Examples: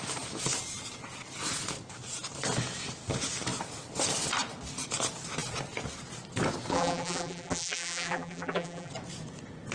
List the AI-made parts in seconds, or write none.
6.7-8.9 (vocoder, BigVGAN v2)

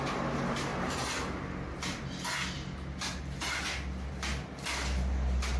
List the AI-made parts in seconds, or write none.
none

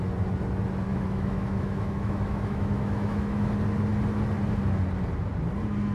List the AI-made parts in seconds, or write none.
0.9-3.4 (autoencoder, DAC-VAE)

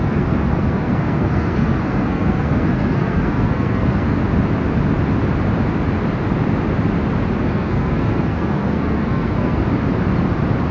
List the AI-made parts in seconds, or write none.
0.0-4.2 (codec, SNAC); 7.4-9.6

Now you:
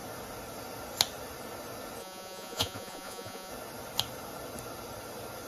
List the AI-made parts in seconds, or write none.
2.0-3.5 (vocoder, Vocos)

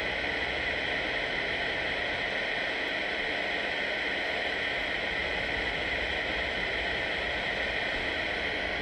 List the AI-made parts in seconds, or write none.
5.2-8.8 (vocoder, BigVGAN v2)

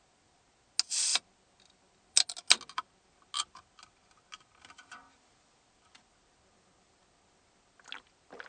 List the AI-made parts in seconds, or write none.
none